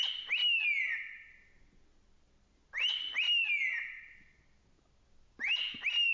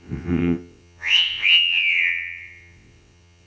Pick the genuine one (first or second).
first